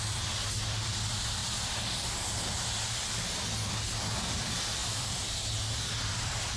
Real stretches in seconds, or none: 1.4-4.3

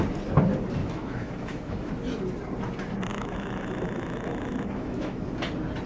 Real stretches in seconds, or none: 0.0-0.8; 1.9-3.1; 5.3-5.9

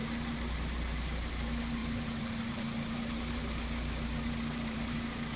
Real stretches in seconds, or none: 1.3-1.8; 5.0-5.4